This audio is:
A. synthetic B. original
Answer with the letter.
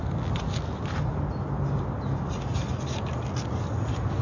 B